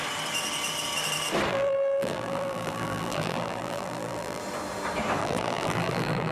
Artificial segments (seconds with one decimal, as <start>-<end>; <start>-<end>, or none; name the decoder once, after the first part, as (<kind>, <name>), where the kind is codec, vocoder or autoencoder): 1.5-4.4 (vocoder, BigVGAN v2); 5.2-6.3